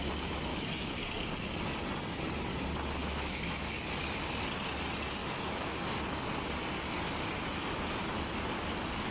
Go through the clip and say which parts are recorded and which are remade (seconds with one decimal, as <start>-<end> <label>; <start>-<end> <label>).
0.0-0.5 recorded; 0.5-1.0 remade; 1.0-3.0 recorded; 3.0-3.7 remade; 3.7-5.2 recorded; 5.2-5.7 remade; 5.7-9.1 recorded